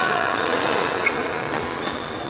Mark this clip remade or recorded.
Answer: remade